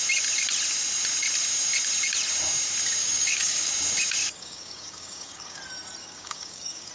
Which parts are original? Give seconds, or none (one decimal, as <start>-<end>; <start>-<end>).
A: 0.0-3.0; 3.7-4.2; 5.6-6.0